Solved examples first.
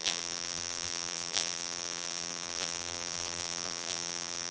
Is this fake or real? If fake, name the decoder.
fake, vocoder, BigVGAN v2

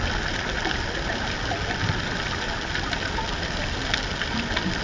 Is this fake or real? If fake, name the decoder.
real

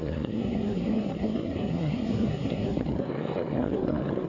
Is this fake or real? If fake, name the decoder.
fake, codec, SNAC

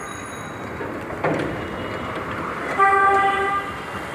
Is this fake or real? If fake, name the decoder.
real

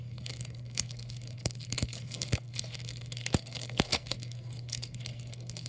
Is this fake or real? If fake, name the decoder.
fake, codec, SNAC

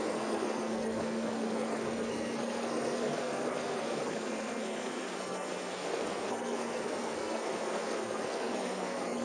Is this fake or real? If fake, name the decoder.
fake, codec, SNAC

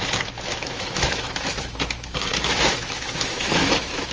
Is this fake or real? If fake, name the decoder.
fake, autoencoder, DAC-VAE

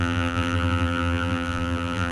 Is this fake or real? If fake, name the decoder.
fake, vocoder, BigVGAN v2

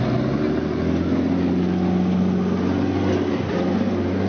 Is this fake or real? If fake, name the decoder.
real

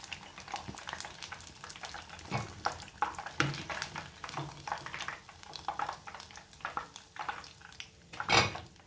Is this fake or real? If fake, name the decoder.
real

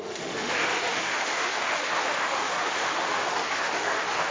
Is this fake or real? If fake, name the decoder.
fake, autoencoder, DAC-VAE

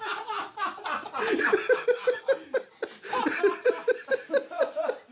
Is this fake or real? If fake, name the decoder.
real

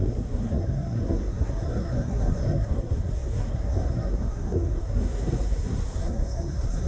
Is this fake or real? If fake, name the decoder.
fake, codec, SNAC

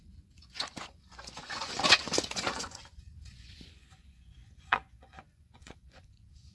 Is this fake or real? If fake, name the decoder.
fake, vocoder, Vocos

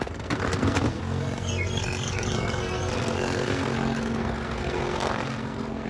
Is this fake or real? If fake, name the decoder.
fake, codec, SNAC